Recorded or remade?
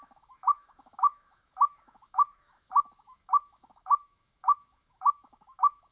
remade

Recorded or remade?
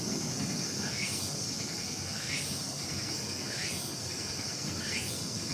remade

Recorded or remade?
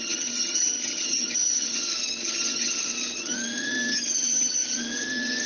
remade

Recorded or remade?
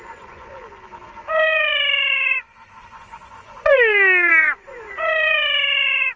remade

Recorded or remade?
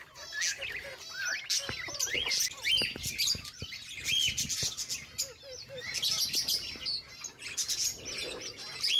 recorded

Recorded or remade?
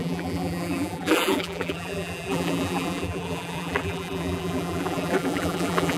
remade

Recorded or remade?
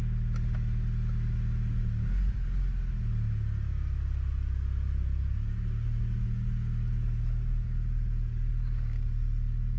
recorded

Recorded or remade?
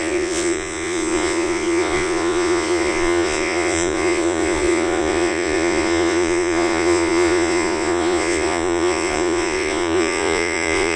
remade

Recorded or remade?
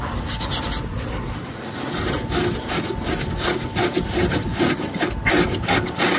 recorded